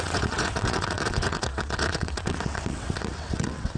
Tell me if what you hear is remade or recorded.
remade